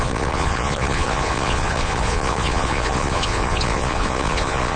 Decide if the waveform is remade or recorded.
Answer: remade